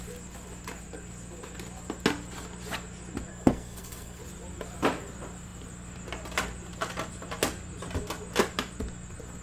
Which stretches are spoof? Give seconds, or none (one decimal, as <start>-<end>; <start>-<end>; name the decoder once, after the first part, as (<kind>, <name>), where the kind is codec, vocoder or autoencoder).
3.3-4.2 (codec, SNAC)